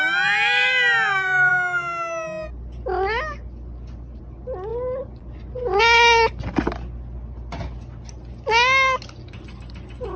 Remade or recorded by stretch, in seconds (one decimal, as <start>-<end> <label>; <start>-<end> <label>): 0.0-10.2 recorded